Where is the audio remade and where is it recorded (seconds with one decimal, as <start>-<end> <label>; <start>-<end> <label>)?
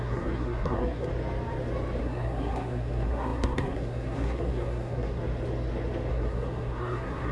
0.0-1.1 remade; 1.1-2.0 recorded; 2.0-5.2 remade; 5.2-6.1 recorded; 6.1-7.3 remade